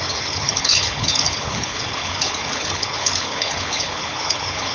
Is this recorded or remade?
remade